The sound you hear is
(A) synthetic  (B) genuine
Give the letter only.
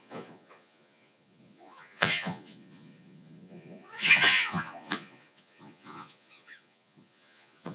A